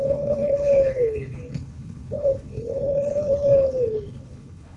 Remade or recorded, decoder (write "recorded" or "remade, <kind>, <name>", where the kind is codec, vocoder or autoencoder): remade, codec, HILCodec